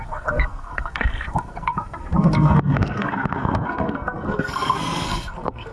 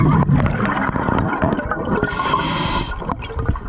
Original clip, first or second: second